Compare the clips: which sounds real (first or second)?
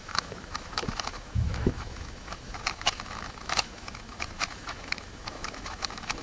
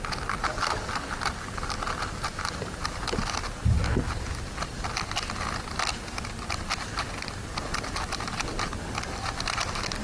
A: second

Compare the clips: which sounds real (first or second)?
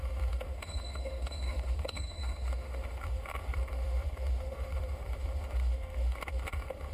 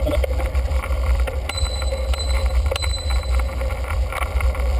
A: second